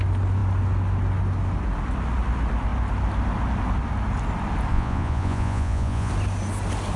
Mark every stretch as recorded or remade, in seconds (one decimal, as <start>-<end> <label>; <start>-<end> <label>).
0.0-4.7 recorded; 4.7-6.1 remade; 6.1-7.0 recorded